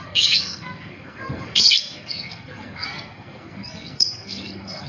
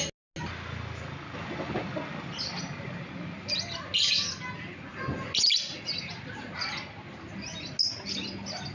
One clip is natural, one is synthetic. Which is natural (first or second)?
second